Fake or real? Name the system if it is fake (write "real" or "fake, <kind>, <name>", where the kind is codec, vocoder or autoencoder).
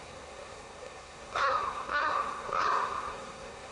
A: fake, codec, SNAC